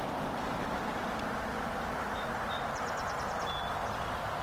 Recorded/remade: recorded